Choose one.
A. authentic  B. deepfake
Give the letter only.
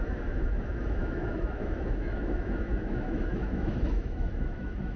B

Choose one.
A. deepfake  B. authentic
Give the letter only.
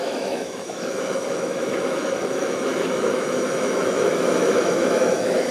A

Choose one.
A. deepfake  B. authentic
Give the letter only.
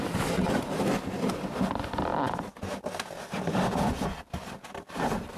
B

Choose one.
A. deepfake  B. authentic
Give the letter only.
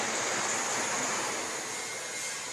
B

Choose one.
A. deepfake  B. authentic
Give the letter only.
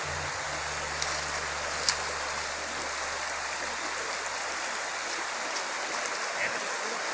B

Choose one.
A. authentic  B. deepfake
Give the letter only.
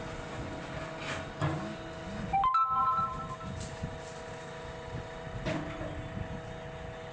A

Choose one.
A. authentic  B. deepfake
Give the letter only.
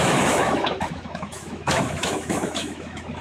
B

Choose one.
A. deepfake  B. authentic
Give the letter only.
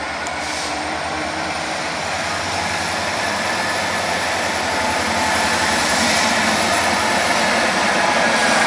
A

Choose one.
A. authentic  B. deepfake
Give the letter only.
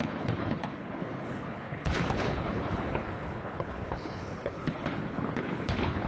B